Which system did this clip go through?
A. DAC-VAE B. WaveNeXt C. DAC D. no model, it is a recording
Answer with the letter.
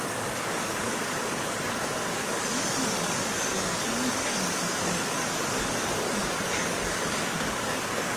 C